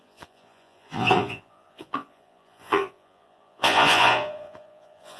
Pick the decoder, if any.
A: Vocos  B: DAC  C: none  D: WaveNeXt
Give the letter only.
A